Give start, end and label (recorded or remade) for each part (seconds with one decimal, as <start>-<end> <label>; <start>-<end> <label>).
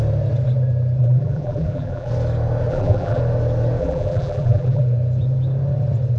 0.0-1.0 recorded; 1.0-2.1 remade; 2.1-2.7 recorded; 2.7-3.2 remade; 3.2-3.8 recorded; 3.8-4.8 remade; 4.8-6.2 recorded